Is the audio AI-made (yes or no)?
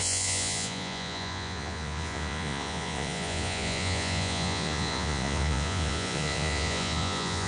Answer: yes